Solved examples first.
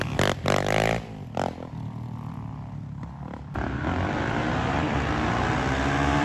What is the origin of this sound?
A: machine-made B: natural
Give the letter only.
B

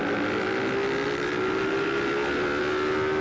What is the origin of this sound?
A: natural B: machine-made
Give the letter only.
A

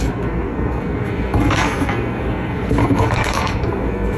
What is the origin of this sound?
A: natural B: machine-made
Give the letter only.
B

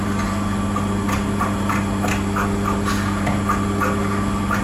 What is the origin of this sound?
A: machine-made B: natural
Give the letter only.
B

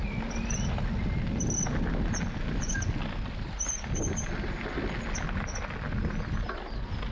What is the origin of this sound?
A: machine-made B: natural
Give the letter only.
B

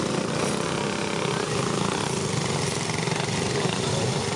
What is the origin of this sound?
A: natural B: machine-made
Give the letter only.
A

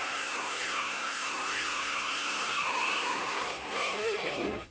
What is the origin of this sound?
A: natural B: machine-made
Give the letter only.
B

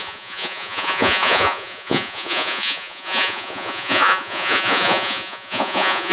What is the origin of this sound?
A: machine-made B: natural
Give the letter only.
A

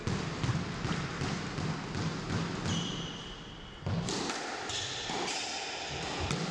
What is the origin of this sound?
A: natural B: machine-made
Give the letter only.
A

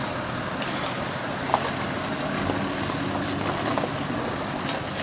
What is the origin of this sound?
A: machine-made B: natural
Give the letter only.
B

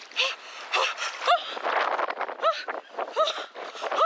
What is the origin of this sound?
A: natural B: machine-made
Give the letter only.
A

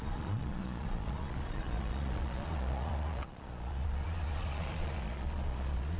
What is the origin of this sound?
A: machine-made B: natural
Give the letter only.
A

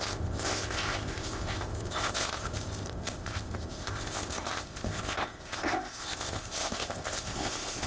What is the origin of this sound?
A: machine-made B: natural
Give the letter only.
A